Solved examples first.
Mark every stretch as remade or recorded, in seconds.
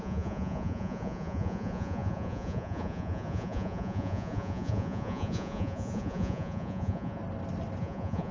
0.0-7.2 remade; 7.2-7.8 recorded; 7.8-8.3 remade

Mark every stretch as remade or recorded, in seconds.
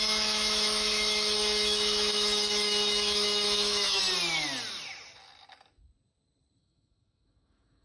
0.0-4.0 remade; 4.0-6.6 recorded; 6.6-7.8 remade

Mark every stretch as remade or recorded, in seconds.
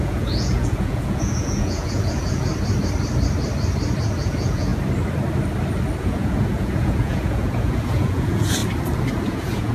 0.0-2.5 remade; 2.5-4.2 recorded; 4.2-4.7 remade; 4.7-6.0 recorded; 6.0-8.6 remade; 8.6-9.2 recorded; 9.2-9.7 remade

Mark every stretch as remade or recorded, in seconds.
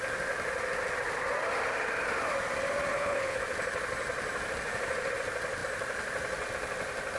0.0-2.9 recorded; 2.9-3.4 remade; 3.4-7.2 recorded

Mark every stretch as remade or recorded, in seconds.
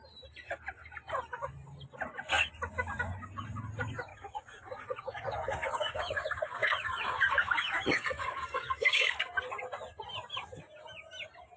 0.0-4.1 recorded; 4.1-9.2 remade; 9.2-11.6 recorded